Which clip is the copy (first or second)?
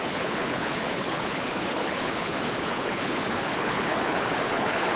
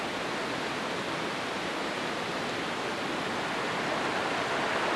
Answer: first